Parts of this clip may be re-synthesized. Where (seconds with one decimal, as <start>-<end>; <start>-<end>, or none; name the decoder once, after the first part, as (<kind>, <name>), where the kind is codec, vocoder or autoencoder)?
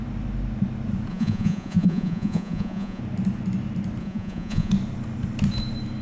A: 1.1-3.0 (vocoder, Vocos); 4.0-4.7